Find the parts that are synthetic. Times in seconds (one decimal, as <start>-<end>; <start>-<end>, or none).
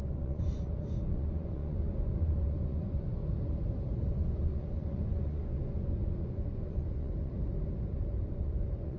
0.0-3.2; 4.1-7.3; 8.3-9.0